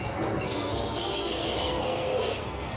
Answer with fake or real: fake